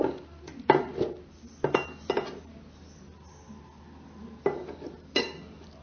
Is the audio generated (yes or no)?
no